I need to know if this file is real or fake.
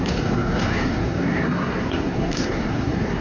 fake